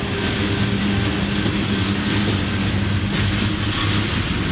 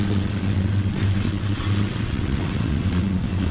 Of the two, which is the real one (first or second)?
first